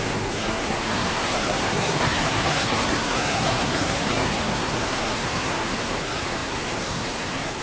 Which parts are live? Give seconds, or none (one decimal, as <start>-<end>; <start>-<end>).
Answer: none